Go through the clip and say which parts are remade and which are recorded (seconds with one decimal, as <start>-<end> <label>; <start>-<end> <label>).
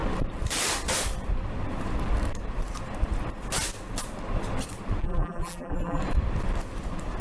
0.0-5.0 recorded; 5.0-6.0 remade; 6.0-7.2 recorded